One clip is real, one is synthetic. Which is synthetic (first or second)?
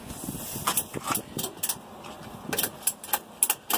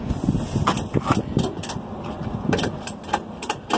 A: second